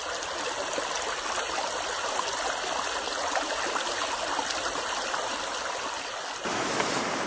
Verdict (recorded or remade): recorded